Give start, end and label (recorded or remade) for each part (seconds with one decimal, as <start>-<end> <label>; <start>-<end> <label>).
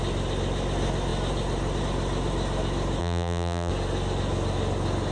0.0-3.0 recorded; 3.0-3.7 remade; 3.7-5.1 recorded